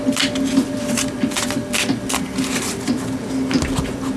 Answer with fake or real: real